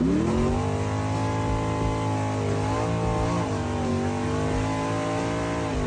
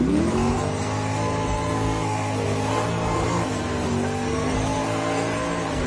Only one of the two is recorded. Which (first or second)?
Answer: first